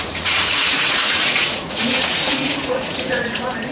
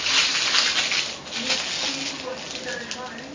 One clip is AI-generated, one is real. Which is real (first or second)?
second